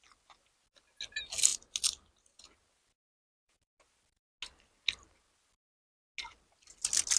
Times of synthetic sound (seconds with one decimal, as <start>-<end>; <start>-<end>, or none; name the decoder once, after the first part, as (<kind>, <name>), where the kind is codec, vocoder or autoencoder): none